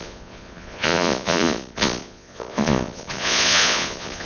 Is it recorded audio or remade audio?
remade